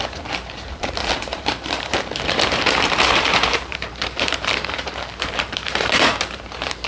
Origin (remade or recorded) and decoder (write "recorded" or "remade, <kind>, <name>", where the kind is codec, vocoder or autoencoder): remade, vocoder, BigVGAN v2